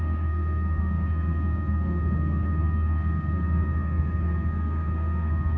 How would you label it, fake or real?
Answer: fake